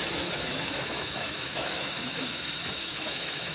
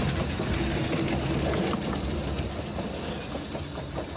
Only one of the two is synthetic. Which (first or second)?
first